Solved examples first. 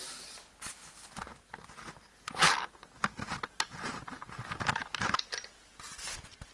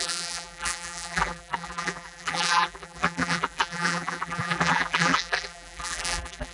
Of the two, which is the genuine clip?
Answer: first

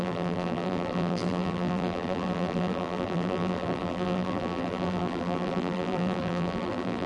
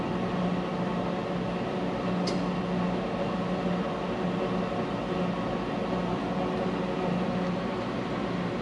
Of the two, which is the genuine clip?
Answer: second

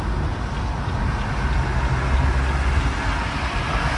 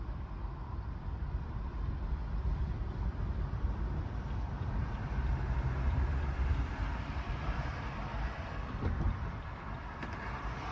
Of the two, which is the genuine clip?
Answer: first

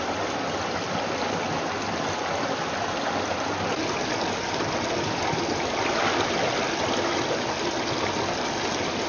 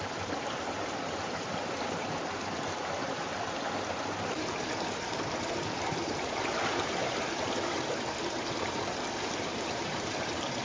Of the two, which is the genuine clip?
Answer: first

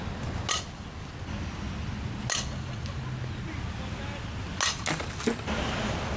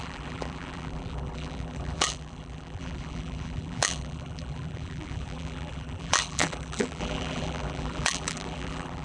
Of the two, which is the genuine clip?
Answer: first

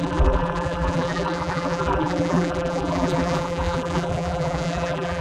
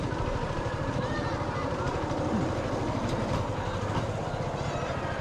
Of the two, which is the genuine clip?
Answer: second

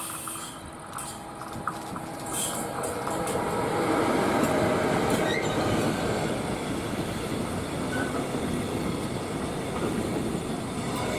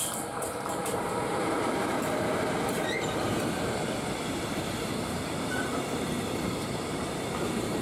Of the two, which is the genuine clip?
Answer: first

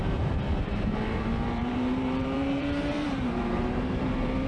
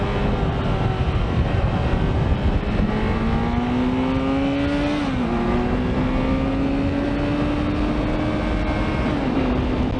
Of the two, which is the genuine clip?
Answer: second